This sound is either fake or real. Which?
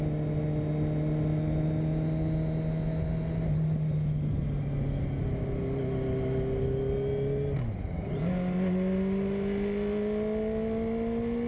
real